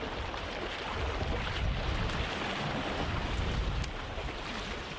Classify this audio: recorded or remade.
recorded